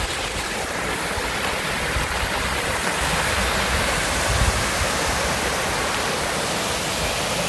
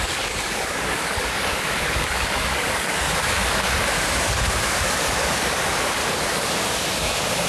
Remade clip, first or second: second